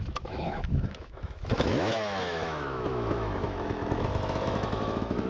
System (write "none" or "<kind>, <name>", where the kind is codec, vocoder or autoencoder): autoencoder, DAC-VAE